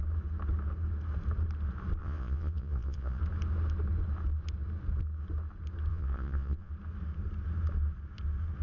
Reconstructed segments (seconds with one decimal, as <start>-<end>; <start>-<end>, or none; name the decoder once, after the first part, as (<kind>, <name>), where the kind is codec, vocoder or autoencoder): 2.0-3.2 (vocoder, Vocos); 5.9-6.7